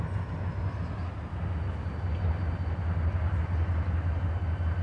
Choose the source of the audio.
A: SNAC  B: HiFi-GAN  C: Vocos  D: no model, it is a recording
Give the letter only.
D